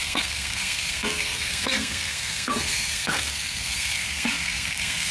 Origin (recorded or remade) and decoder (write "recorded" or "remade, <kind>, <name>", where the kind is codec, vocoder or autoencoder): remade, codec, SNAC